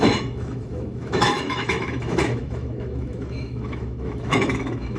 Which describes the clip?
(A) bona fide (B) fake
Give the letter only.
B